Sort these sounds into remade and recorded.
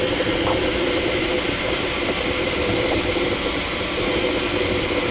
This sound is recorded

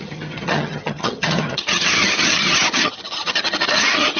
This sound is remade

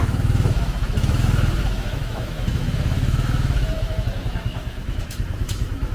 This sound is remade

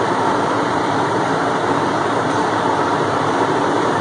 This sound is remade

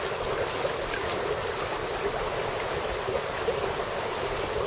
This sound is recorded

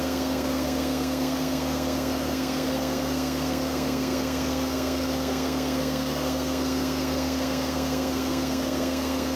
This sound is remade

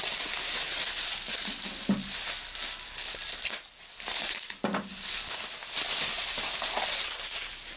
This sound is recorded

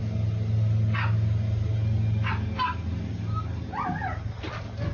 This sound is recorded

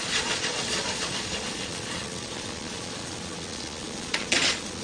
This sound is remade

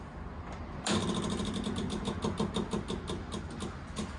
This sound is recorded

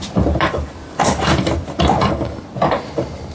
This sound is remade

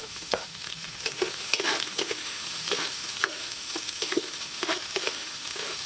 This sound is remade